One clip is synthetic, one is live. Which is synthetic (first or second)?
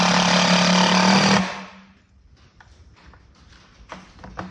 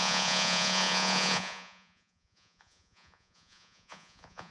second